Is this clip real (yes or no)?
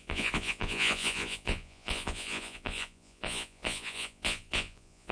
no